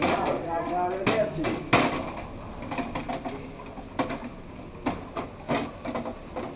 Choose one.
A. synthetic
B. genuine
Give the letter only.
B